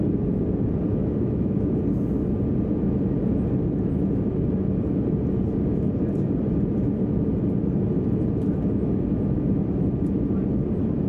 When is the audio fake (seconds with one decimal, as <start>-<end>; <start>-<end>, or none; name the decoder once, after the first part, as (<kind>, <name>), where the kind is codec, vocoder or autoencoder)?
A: 0.9-1.8 (autoencoder, DAC-VAE)